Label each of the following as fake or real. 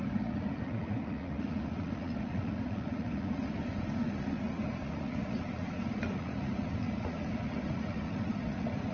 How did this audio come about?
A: fake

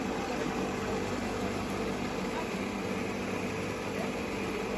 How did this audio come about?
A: real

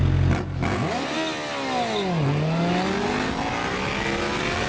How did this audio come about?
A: real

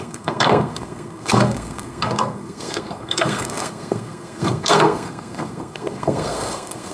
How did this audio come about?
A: fake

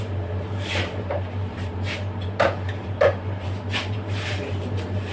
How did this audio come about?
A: fake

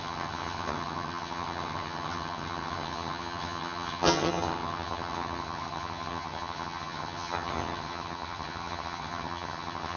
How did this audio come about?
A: fake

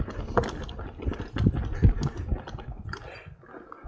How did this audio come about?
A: real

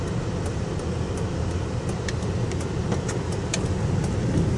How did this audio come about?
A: real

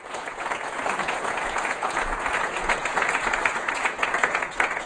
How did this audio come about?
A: fake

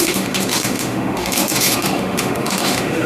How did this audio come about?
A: fake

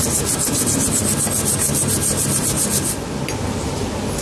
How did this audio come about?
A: real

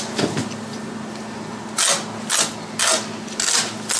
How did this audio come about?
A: real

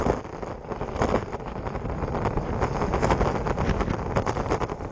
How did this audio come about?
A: real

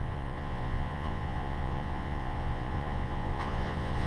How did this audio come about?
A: fake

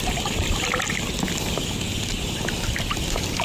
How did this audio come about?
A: real